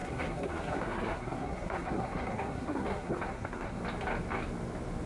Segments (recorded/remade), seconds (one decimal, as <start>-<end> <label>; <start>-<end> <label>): 0.0-3.8 remade; 3.8-5.1 recorded